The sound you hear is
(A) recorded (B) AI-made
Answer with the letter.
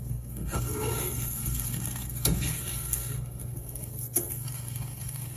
B